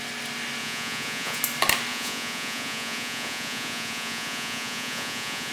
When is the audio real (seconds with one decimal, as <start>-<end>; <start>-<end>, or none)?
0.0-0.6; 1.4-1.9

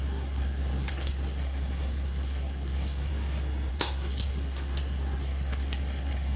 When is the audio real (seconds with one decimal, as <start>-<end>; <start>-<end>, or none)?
3.1-3.7

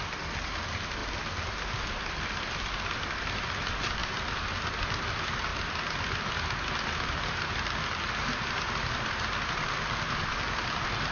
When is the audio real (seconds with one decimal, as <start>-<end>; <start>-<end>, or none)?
0.0-1.0; 3.5-5.5; 6.2-11.1

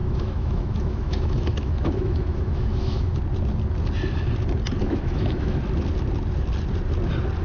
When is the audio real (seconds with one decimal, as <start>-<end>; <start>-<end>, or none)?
3.2-4.8; 5.6-7.4

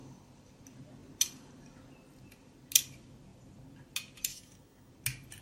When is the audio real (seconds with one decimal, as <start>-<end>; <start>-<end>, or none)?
0.0-4.3; 4.9-5.4

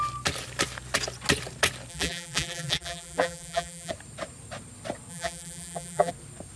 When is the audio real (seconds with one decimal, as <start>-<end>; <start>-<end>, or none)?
0.0-1.9; 3.9-5.1; 6.1-6.6

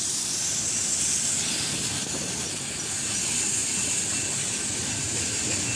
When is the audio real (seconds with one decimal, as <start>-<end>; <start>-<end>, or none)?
0.0-5.8